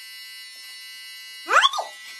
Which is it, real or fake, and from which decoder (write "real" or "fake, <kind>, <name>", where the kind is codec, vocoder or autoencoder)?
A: real